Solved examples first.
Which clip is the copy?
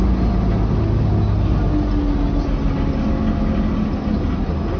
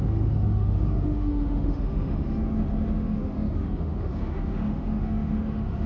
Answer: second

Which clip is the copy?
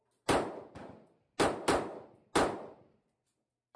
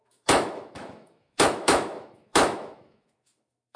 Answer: second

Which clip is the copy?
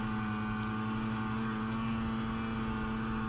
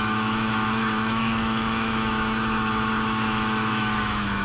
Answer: second